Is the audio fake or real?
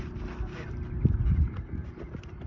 real